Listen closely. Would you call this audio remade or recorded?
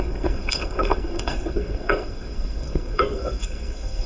remade